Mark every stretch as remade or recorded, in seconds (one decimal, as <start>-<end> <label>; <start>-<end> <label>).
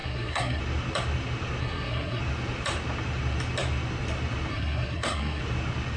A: 0.0-0.6 remade; 0.6-1.6 recorded; 1.6-2.2 remade; 2.2-4.5 recorded; 4.5-5.4 remade; 5.4-6.0 recorded